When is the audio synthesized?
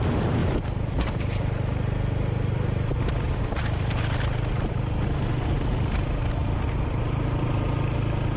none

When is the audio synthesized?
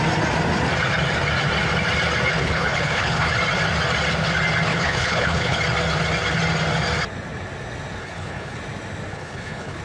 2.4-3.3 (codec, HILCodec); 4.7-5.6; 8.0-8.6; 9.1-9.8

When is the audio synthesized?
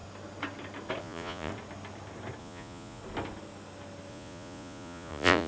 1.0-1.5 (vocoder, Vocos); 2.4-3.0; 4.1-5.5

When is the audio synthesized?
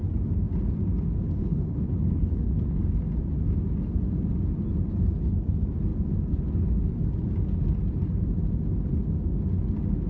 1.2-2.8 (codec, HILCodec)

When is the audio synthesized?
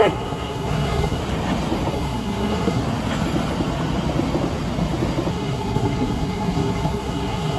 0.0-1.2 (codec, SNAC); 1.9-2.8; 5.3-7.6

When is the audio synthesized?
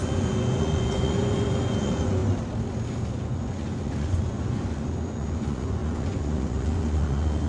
0.0-2.2 (vocoder, Vocos); 3.1-7.5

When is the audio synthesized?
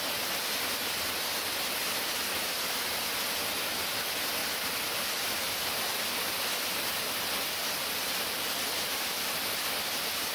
none